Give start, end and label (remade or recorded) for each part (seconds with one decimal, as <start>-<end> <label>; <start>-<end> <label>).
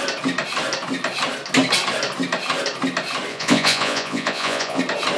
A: 0.0-3.3 recorded; 3.3-4.8 remade; 4.8-5.2 recorded